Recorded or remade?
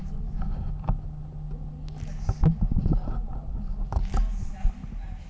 recorded